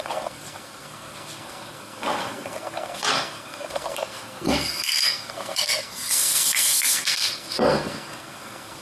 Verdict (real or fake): fake